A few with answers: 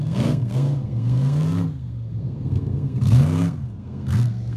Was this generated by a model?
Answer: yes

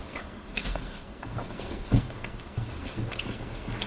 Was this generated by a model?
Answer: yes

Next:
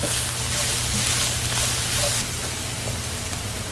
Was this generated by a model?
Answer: no